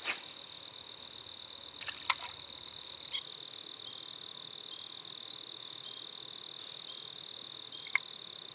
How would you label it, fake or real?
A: real